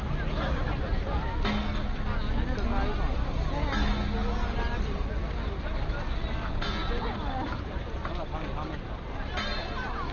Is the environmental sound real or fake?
real